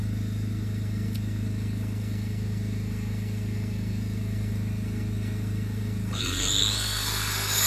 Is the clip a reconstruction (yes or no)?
yes